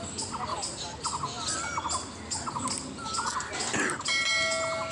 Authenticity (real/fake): real